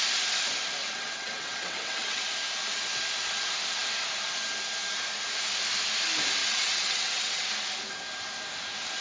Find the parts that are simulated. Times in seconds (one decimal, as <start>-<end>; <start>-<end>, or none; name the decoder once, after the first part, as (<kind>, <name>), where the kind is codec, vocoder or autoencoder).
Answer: 0.8-2.2 (vocoder, WaveNeXt); 6.4-7.5